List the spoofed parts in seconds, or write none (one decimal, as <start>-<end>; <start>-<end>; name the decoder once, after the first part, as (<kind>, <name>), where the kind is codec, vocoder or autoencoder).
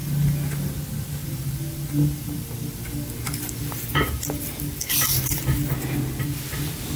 0.0-0.7 (vocoder, BigVGAN v2); 1.2-5.4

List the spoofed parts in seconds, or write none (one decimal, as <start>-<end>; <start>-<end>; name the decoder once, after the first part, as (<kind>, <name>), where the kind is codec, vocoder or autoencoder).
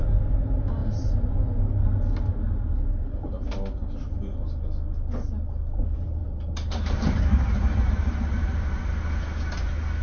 0.8-1.6 (vocoder, BigVGAN v2); 6.2-8.8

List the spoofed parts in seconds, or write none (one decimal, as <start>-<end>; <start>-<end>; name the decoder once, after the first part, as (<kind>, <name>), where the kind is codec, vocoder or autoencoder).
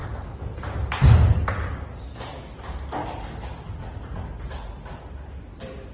3.0-3.9 (vocoder, BigVGAN v2)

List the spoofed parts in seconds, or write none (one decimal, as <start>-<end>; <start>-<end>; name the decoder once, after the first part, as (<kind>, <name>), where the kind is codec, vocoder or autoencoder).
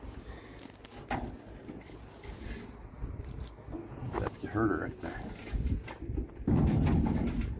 none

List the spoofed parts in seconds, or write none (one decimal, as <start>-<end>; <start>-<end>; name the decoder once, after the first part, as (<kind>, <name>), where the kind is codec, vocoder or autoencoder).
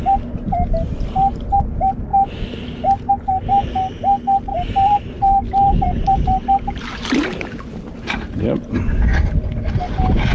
4.5-8.4 (vocoder, BigVGAN v2)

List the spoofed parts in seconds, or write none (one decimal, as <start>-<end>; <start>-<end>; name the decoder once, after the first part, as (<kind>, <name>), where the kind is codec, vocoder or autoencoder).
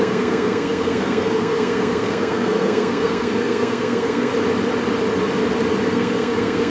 0.0-4.3 (codec, SNAC); 5.9-6.7